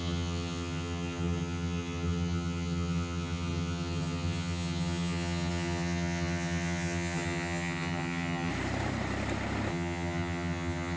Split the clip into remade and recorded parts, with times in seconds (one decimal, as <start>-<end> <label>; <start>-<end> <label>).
0.0-8.5 remade; 8.5-9.7 recorded; 9.7-11.0 remade